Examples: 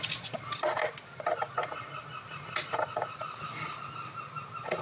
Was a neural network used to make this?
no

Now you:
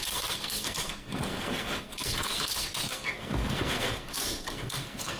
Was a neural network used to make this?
yes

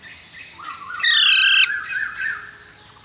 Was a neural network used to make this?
no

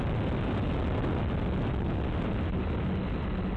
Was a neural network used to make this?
no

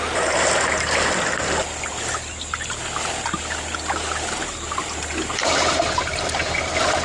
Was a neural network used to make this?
no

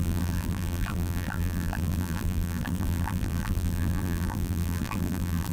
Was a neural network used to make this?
yes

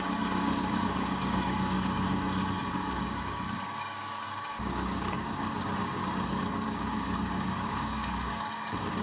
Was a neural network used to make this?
yes